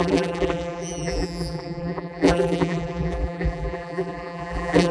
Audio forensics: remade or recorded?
remade